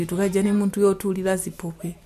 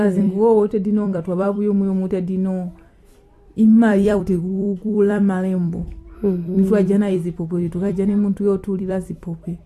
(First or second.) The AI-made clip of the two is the second